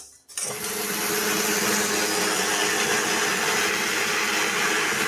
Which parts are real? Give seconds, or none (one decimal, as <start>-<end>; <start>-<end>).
0.0-5.1